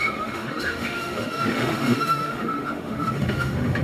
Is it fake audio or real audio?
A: fake